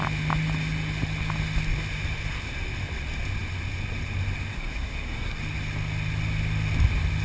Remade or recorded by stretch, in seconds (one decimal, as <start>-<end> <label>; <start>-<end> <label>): 0.0-4.5 recorded; 4.5-5.4 remade; 5.4-7.2 recorded